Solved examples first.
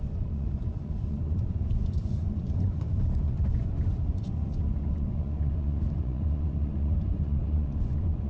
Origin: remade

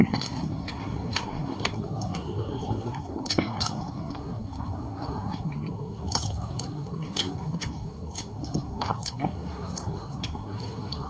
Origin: remade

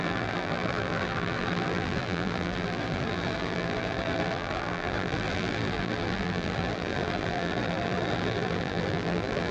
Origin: remade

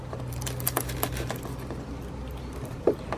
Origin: remade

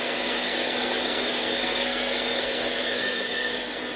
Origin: remade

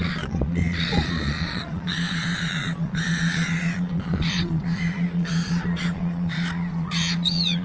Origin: remade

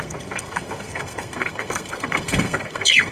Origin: remade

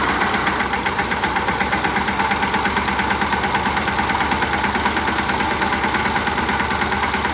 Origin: recorded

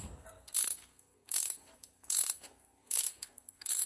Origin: remade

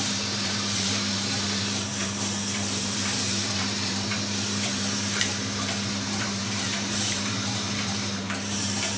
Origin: remade